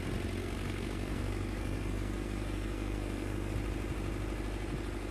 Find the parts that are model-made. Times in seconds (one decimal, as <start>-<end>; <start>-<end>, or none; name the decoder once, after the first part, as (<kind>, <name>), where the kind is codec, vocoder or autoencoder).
0.4-3.5 (codec, SNAC)